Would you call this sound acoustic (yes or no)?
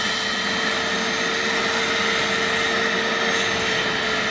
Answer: yes